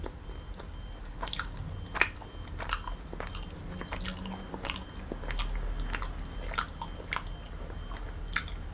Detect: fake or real real